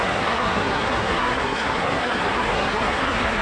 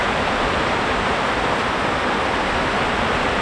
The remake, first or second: first